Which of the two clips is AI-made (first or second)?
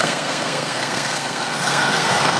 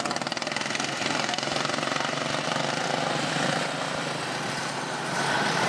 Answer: first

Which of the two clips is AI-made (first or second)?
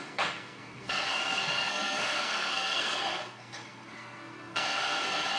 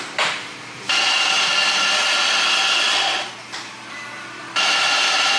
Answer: first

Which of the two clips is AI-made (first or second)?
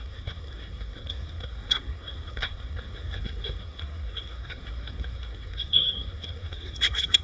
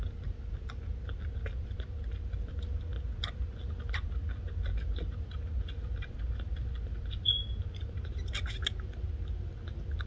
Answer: first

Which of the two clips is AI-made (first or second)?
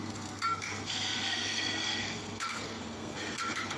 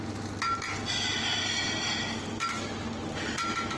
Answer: first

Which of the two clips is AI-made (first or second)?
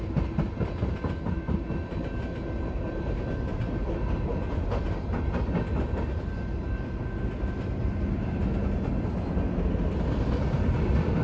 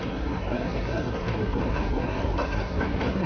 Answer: second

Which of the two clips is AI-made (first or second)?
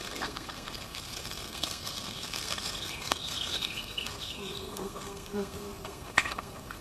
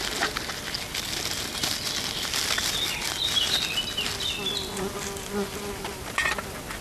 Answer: first